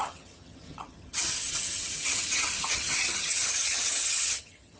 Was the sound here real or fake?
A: fake